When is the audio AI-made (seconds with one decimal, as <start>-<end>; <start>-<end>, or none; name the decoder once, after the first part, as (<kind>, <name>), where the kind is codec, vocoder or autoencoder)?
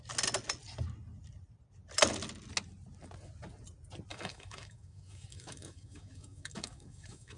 4.1-7.4 (autoencoder, DAC-VAE)